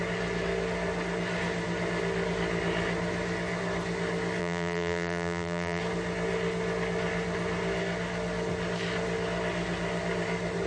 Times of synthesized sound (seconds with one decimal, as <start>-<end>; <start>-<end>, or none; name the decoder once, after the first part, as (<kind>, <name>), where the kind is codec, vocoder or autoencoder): 4.4-5.8 (vocoder, BigVGAN v2)